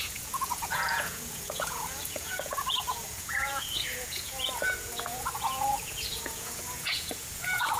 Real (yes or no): no